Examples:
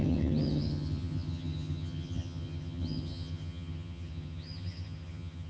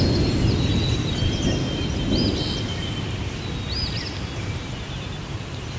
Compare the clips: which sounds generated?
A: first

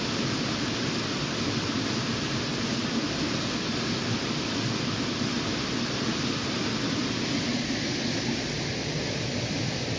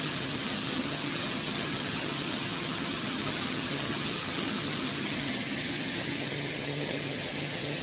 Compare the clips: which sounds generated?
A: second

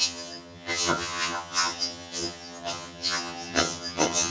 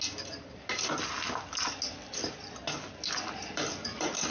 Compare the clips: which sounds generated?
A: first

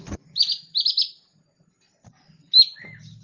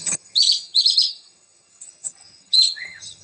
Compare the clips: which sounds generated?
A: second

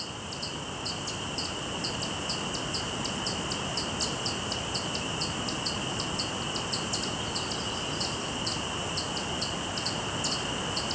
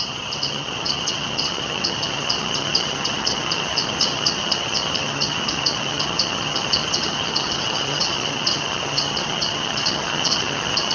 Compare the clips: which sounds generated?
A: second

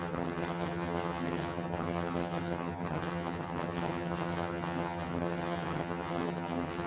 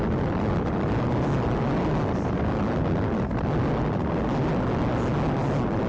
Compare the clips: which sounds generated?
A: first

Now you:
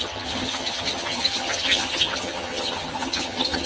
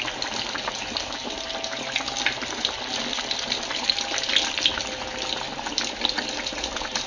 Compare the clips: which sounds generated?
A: first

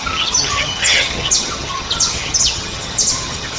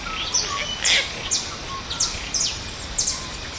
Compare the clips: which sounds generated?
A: first